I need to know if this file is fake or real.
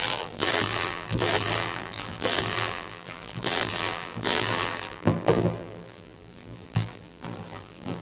fake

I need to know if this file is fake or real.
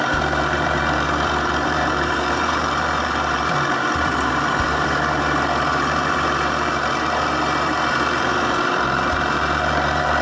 fake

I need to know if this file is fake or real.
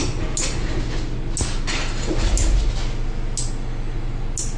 real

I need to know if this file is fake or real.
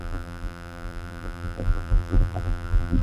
fake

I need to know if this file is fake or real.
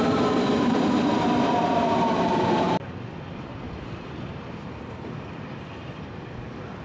fake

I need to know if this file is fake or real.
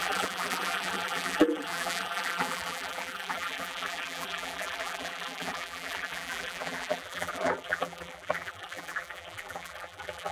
fake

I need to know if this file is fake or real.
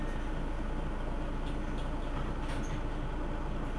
real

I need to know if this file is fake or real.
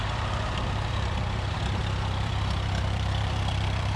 fake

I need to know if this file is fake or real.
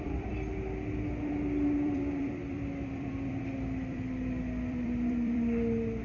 fake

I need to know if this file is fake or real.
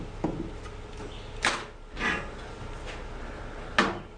real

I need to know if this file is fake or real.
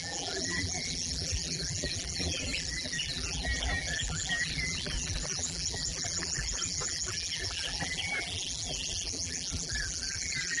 fake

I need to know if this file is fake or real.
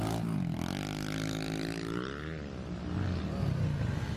real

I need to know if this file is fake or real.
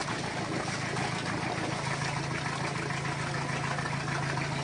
real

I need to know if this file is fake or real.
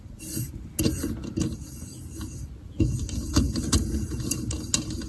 real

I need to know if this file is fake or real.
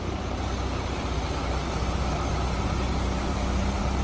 fake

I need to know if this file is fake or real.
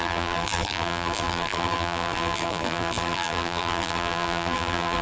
fake